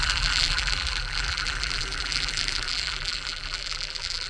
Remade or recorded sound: remade